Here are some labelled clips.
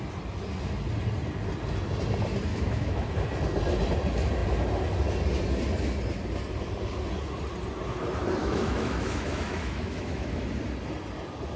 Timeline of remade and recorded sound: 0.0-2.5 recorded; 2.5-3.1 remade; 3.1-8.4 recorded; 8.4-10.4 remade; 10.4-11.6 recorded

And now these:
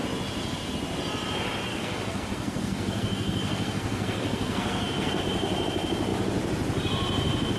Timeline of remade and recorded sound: 0.0-1.7 recorded; 1.7-5.2 remade; 5.2-7.6 recorded

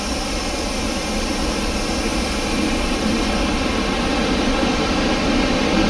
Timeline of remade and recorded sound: 0.0-5.9 recorded

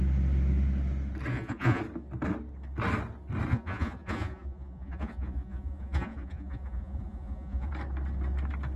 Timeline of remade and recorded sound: 0.0-1.3 recorded; 1.3-1.8 remade; 1.8-3.5 recorded; 3.5-7.7 remade; 7.7-8.8 recorded

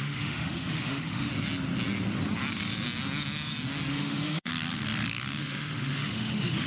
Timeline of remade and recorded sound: 0.0-1.3 remade; 1.3-3.9 recorded; 3.9-4.5 remade; 4.5-5.4 recorded; 5.4-6.7 remade

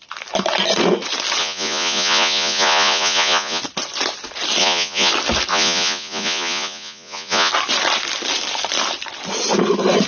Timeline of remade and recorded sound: 0.0-1.4 recorded; 1.4-3.6 remade; 3.6-4.6 recorded; 4.6-5.1 remade; 5.1-5.5 recorded; 5.5-7.5 remade; 7.5-10.1 recorded

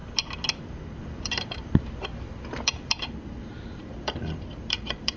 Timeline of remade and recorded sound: 0.0-0.6 recorded; 0.6-5.2 remade